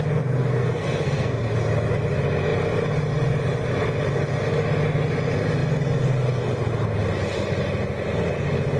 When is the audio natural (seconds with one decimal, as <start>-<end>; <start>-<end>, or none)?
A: 0.0-0.4; 1.5-8.8